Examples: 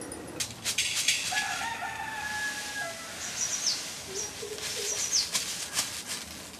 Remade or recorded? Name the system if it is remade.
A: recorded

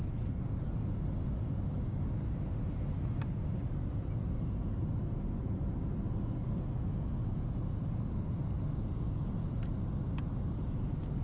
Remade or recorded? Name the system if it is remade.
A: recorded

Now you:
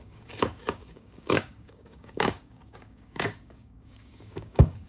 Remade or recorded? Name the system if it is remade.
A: remade, codec, DAC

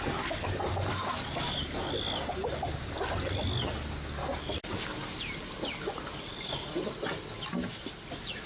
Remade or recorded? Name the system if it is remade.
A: recorded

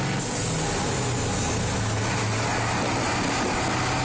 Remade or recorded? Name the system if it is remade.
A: recorded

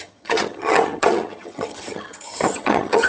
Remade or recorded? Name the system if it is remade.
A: remade, vocoder, HiFi-GAN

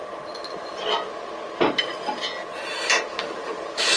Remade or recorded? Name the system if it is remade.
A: recorded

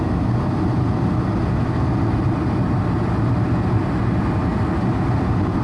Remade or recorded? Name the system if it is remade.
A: recorded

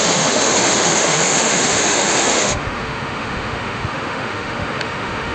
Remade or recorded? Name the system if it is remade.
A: remade, autoencoder, DAC-VAE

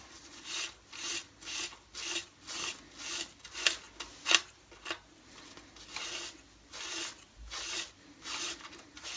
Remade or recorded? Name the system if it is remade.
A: recorded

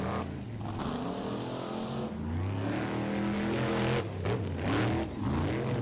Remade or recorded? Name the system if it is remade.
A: recorded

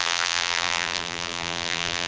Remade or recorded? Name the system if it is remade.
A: remade, vocoder, BigVGAN v2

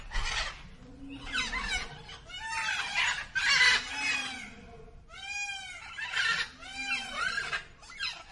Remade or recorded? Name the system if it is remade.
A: recorded